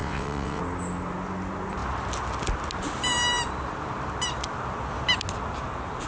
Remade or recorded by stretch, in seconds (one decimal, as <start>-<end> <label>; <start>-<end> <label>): 0.0-0.6 remade; 0.6-6.1 recorded